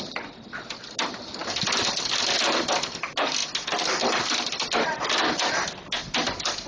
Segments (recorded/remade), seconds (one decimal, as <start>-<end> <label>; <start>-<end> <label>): 0.0-6.7 recorded